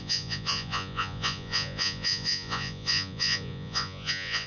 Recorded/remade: remade